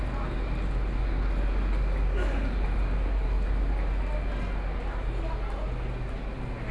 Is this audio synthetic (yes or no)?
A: no